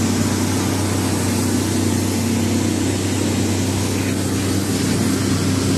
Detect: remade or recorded recorded